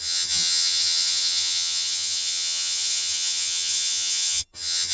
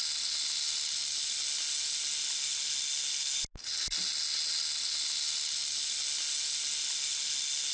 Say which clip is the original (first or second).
second